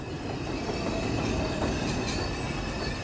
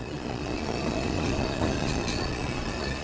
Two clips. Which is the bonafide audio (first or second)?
first